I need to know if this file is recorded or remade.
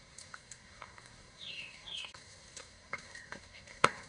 remade